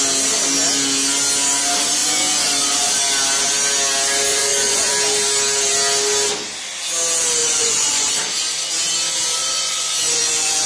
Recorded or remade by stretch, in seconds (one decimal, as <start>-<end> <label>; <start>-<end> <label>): 0.0-2.0 recorded; 2.0-2.9 remade; 2.9-4.3 recorded; 4.3-4.9 remade; 4.9-7.4 recorded; 7.4-8.1 remade; 8.1-9.4 recorded; 9.4-10.7 remade